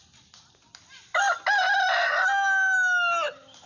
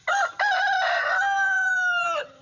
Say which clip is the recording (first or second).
first